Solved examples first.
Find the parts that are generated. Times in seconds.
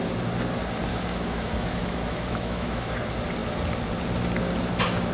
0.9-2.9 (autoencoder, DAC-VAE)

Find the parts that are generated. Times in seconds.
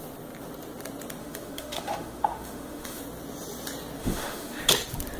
1.2-3.0 (autoencoder, DAC-VAE); 4.0-4.6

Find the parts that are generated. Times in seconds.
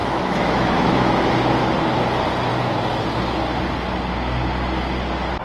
0.0-1.3 (autoencoder, DAC-VAE)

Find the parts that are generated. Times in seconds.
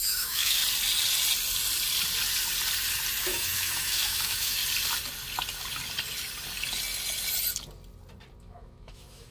0.0-0.6 (autoencoder, DAC-VAE); 3.2-4.6; 8.4-9.3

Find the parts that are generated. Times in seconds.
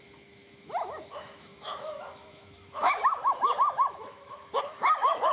0.0-5.3 (autoencoder, DAC-VAE)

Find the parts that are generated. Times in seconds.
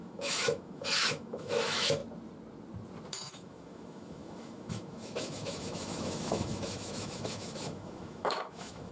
0.0-2.0 (autoencoder, DAC-VAE); 3.1-8.9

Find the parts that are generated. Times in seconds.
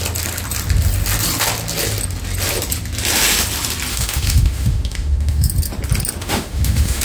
3.9-5.5 (autoencoder, DAC-VAE); 6.2-7.0